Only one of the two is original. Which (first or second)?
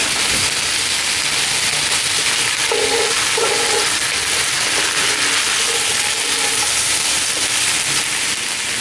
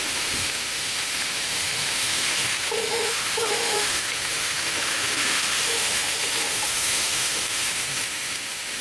first